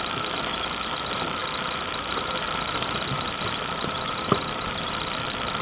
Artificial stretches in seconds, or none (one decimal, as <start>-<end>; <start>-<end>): none